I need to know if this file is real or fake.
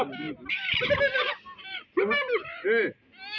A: real